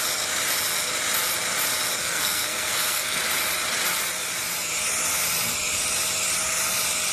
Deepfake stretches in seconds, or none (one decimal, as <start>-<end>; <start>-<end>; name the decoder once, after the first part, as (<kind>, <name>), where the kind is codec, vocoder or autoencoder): 2.0-3.2 (codec, SNAC)